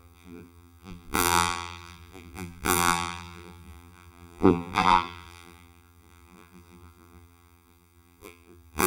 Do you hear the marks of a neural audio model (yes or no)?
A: yes